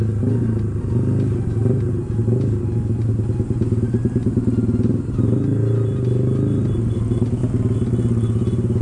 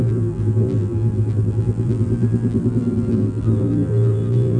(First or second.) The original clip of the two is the first